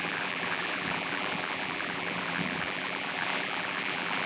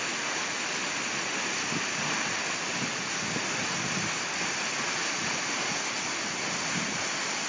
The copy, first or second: first